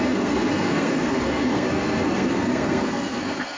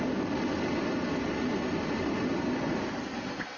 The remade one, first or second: first